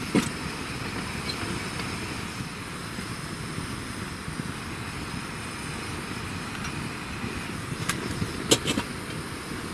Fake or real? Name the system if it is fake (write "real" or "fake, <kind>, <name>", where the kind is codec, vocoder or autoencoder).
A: real